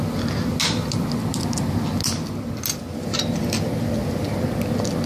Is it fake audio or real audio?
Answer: real